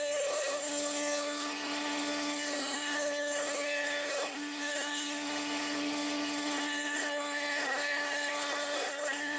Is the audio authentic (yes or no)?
no